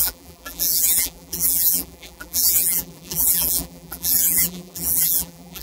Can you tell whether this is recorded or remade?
remade